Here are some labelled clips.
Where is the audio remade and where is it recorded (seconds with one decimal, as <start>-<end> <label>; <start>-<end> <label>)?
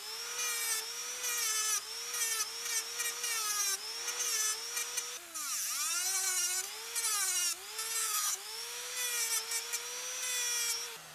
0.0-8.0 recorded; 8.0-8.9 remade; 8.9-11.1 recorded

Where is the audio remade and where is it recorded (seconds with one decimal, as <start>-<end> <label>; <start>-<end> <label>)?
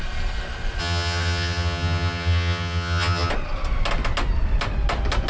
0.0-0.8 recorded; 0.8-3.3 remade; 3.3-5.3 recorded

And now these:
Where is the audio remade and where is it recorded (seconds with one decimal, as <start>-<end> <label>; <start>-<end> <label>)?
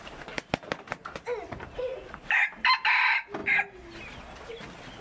0.0-5.0 recorded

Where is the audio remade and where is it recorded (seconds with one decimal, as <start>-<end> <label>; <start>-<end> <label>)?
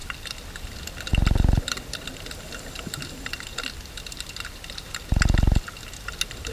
0.0-0.5 remade; 0.5-1.1 recorded; 1.1-5.0 remade; 5.0-6.5 recorded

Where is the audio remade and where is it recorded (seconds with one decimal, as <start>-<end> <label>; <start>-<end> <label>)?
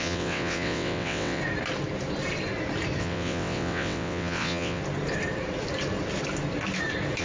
0.0-1.4 remade; 1.4-3.0 recorded; 3.0-4.8 remade; 4.8-7.2 recorded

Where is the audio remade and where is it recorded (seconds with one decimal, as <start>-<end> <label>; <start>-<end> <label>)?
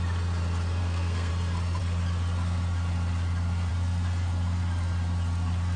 0.0-0.8 recorded; 0.8-1.3 remade; 1.3-5.8 recorded